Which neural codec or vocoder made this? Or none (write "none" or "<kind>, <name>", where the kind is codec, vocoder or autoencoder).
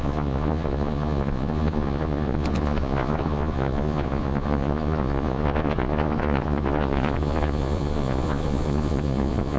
vocoder, Vocos